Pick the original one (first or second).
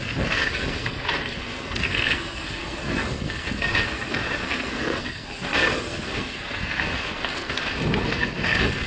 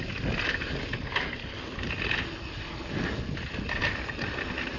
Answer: second